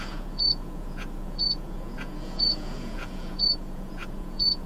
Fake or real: fake